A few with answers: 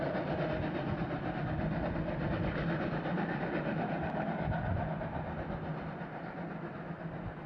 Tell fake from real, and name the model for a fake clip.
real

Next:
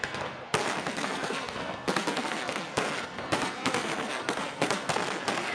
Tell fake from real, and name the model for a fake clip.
fake, codec, SNAC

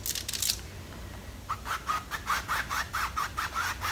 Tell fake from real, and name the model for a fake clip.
real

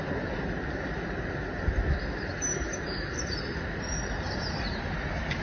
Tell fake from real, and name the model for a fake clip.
real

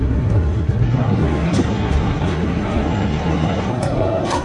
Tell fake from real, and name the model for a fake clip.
fake, codec, SNAC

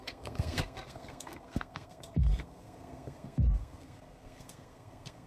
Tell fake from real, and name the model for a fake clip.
fake, codec, SNAC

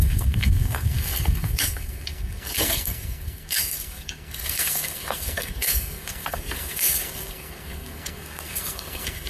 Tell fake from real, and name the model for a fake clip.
fake, codec, SNAC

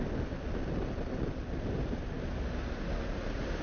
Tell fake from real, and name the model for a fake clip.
real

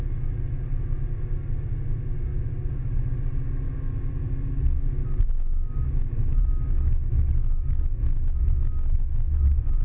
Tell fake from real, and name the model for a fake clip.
real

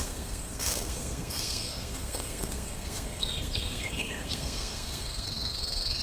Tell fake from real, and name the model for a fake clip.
fake, codec, SNAC